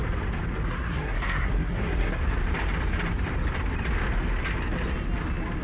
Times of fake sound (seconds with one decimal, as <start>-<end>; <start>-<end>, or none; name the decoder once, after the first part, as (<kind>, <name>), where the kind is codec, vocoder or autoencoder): 0.7-2.2 (codec, SNAC)

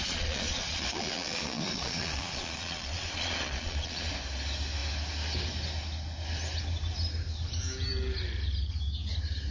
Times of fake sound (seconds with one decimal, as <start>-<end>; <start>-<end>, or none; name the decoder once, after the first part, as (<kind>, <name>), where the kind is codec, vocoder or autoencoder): 0.0-4.1 (vocoder, Vocos)

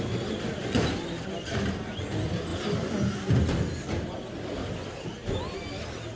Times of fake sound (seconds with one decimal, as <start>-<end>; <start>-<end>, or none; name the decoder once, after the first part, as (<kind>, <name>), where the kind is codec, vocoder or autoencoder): none

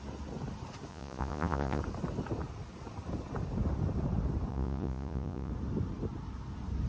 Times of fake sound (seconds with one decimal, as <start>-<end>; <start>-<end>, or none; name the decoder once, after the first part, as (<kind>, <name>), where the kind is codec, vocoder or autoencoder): 0.9-1.8 (vocoder, Vocos); 4.5-5.5